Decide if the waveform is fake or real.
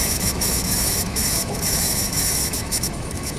fake